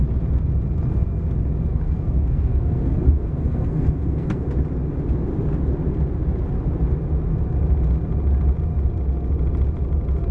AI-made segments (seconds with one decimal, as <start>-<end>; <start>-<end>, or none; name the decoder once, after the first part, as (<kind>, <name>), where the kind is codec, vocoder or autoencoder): 1.7-4.4 (codec, SNAC)